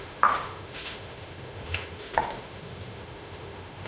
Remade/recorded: remade